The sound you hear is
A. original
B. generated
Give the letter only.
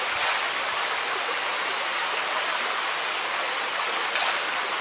A